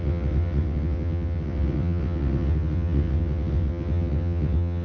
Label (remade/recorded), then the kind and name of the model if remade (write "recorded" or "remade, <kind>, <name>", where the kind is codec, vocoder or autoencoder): remade, vocoder, WaveNeXt